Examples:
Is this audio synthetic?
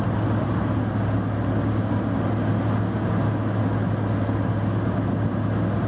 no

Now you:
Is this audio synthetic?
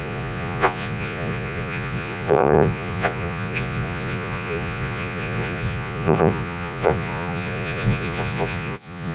yes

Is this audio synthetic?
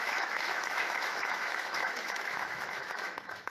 yes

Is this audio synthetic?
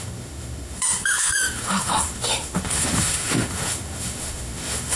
yes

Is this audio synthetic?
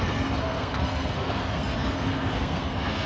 yes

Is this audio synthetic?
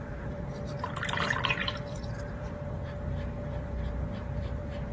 yes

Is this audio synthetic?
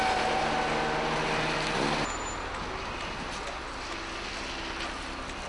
no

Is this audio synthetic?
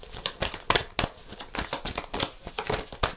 no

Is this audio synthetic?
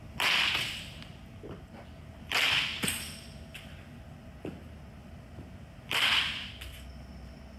no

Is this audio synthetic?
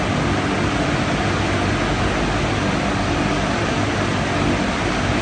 no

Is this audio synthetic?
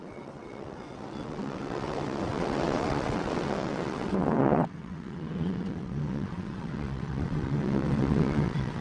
yes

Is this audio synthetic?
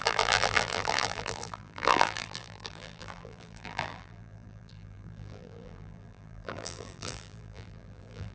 yes